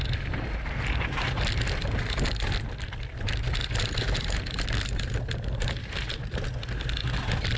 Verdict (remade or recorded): recorded